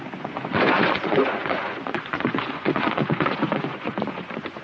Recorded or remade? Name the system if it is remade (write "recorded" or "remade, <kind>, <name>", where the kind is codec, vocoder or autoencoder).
remade, vocoder, Vocos